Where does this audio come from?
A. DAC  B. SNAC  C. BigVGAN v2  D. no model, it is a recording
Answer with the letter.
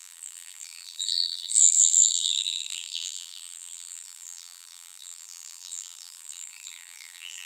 C